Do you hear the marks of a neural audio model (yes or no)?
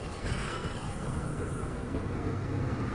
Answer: yes